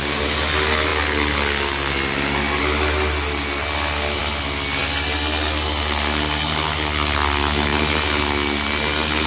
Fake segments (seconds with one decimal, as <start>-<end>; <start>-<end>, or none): none